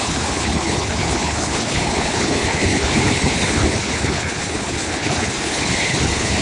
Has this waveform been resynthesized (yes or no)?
yes